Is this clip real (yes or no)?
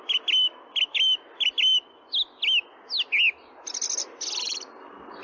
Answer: yes